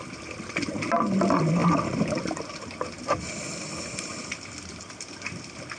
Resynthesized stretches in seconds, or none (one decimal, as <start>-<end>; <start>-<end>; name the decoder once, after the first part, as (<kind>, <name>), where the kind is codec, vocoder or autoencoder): none